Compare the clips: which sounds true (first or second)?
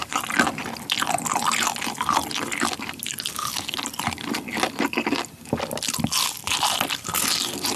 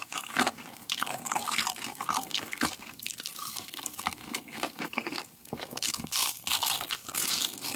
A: first